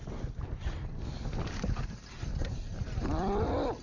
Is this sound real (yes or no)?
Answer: yes